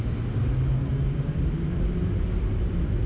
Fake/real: real